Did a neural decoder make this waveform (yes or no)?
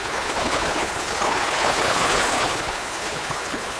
yes